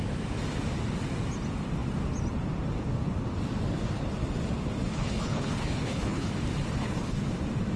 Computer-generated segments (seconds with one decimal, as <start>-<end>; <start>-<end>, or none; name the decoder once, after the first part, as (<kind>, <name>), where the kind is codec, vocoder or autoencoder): 4.9-6.3 (codec, HILCodec); 6.8-7.3